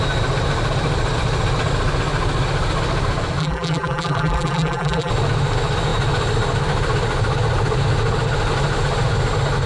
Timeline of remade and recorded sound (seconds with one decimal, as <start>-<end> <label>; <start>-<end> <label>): 0.0-3.4 recorded; 3.4-5.1 remade; 5.1-9.7 recorded